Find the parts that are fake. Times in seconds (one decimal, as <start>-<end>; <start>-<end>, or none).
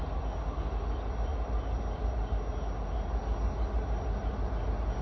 none